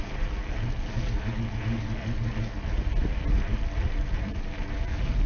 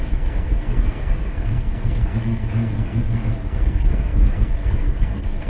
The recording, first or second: first